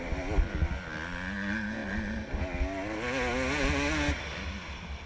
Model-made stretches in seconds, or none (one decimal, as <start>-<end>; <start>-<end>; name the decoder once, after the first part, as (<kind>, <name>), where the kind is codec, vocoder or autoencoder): none

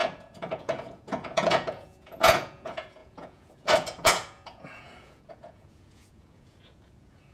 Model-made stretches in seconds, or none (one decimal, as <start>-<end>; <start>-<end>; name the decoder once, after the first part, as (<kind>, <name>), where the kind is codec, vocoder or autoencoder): 0.0-7.3 (vocoder, Vocos)

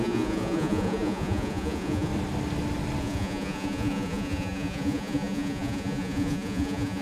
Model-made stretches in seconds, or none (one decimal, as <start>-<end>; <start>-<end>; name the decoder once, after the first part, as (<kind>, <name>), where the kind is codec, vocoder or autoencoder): 0.0-2.1 (vocoder, Vocos); 3.0-7.0

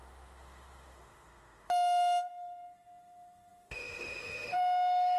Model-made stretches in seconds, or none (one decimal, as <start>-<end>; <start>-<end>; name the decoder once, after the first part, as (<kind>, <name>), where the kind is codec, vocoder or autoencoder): 0.0-5.2 (autoencoder, DAC-VAE)